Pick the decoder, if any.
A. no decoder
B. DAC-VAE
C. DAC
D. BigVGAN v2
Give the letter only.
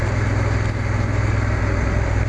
A